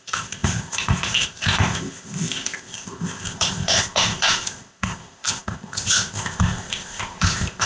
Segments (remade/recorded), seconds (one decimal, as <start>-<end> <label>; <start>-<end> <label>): 0.0-7.7 remade